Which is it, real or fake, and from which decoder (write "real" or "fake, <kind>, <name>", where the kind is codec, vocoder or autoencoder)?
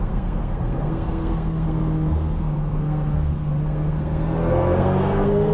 fake, codec, SNAC